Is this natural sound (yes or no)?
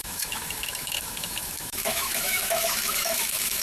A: no